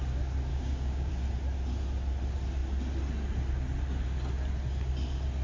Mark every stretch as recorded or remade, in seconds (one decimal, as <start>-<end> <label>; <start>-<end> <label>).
0.0-0.5 recorded; 0.5-1.1 remade; 1.1-5.4 recorded